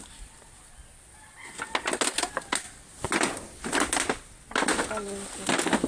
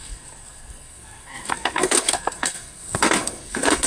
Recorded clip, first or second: first